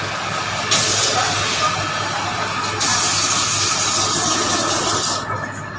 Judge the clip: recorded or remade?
recorded